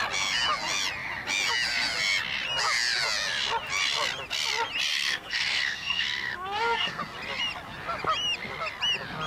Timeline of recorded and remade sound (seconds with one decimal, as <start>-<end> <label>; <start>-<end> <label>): 0.0-4.9 recorded; 4.9-7.0 remade; 7.0-9.3 recorded